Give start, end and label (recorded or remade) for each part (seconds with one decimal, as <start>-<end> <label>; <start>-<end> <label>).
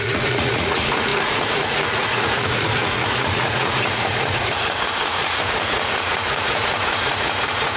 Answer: 0.0-7.8 remade